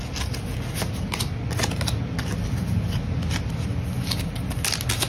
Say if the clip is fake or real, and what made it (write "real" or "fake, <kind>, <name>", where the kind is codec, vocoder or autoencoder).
real